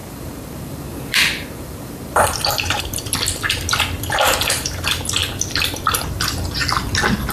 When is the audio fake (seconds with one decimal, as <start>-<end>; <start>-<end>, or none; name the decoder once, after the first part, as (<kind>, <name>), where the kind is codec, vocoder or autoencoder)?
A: 0.0-2.8 (vocoder, BigVGAN v2)

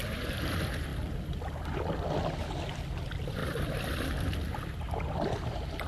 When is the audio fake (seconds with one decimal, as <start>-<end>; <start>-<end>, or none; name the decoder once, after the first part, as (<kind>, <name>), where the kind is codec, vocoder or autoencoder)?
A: 3.4-4.0 (vocoder, BigVGAN v2)